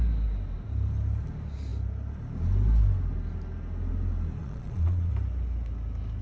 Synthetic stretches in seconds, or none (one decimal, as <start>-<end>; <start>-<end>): 4.4-5.1